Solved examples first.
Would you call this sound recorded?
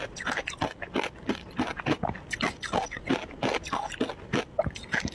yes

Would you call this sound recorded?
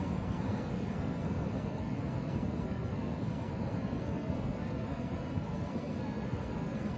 no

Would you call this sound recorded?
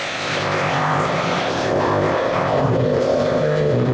no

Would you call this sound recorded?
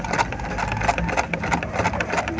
yes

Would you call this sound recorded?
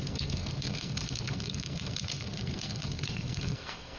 no